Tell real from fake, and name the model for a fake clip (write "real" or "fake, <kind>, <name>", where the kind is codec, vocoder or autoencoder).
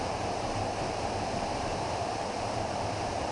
real